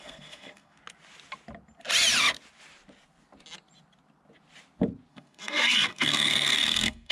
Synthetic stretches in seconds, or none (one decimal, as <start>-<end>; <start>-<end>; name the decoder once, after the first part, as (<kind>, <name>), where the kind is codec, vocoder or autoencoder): 0.0-0.8 (codec, SNAC); 5.1-7.1